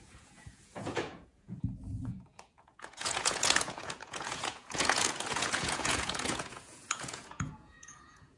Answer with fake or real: fake